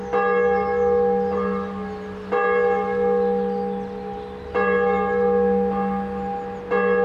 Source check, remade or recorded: recorded